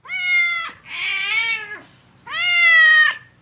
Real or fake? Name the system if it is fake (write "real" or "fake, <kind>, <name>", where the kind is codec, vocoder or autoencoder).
real